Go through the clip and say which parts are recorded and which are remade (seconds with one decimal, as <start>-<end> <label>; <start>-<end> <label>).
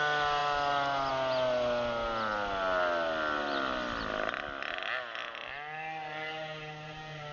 0.0-7.3 recorded